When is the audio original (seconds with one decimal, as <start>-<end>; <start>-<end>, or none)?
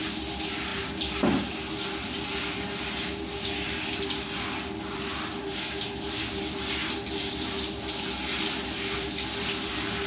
0.0-10.1